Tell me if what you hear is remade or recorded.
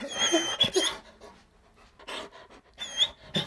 recorded